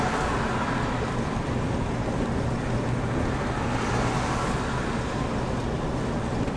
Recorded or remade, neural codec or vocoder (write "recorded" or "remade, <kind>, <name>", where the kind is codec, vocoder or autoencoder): recorded